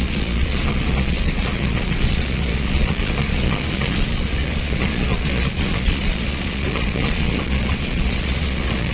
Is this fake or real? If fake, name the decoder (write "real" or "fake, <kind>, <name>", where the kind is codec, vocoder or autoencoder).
fake, vocoder, Vocos